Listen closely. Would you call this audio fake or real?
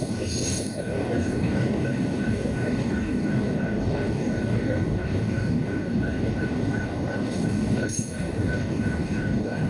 fake